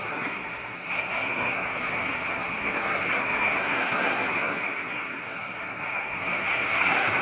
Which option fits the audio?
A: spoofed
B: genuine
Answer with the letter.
A